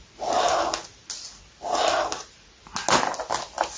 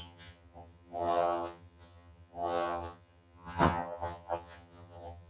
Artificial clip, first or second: second